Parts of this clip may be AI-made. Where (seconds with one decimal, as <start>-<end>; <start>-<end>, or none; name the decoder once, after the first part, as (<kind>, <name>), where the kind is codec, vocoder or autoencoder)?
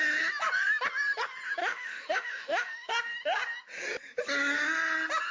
1.6-2.9 (autoencoder, DAC-VAE)